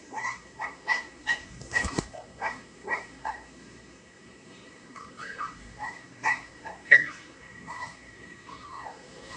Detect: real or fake fake